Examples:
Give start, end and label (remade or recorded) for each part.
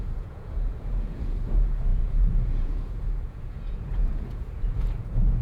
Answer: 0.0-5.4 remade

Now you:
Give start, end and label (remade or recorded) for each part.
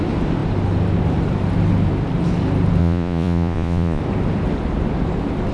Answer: 0.0-2.8 recorded; 2.8-4.0 remade; 4.0-5.5 recorded